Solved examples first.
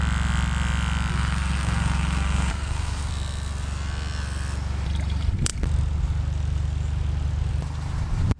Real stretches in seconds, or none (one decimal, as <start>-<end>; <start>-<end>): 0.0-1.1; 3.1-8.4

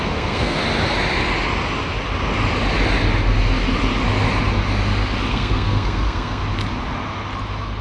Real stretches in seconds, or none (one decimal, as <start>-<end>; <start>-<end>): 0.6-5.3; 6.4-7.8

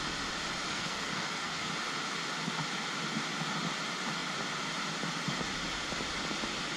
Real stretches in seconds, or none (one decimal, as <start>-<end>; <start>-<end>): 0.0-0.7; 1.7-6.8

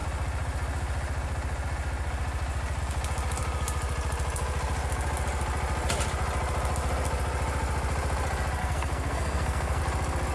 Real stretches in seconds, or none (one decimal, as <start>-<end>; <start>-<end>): 0.0-8.6; 9.8-10.3

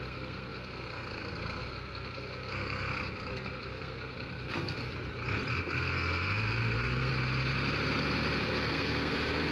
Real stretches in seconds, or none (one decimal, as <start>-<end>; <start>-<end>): 4.8-5.5; 7.1-8.4

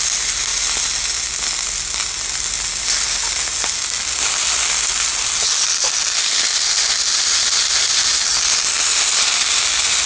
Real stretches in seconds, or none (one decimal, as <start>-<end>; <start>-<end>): 0.0-10.1